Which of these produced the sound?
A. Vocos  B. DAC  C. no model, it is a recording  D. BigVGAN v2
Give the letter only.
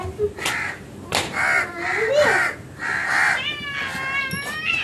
C